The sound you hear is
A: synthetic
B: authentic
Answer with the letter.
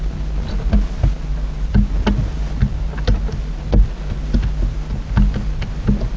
B